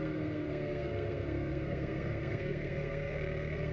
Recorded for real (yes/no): no